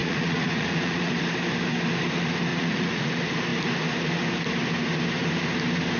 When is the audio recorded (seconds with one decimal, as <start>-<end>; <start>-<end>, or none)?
1.1-2.5; 3.1-6.0